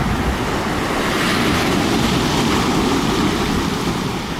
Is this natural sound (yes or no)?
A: yes